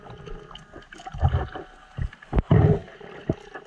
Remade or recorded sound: recorded